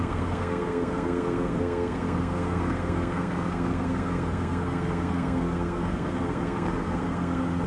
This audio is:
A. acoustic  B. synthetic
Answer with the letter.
B